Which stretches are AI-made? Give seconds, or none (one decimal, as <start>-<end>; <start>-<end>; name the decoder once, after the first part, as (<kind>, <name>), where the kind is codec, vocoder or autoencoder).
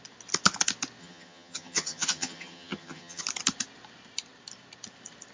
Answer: 1.0-3.2 (vocoder, HiFi-GAN)